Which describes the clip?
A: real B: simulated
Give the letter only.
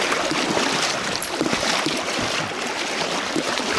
A